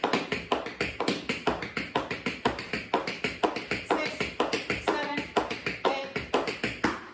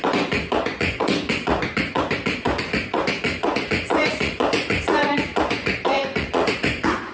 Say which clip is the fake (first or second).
second